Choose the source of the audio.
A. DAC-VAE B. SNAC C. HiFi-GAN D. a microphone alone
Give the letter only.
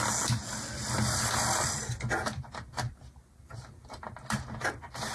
D